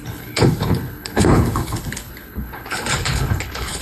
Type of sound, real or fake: fake